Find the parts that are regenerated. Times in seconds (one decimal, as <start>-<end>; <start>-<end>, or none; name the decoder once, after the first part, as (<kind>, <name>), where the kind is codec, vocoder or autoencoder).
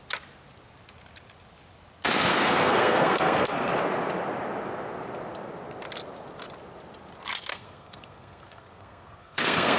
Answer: 2.3-3.7 (codec, SNAC); 7.5-9.8